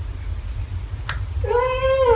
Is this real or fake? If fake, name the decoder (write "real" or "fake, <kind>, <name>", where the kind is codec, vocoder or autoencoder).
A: real